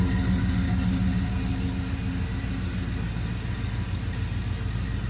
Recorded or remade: recorded